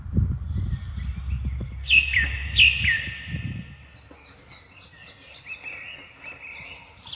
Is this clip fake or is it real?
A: real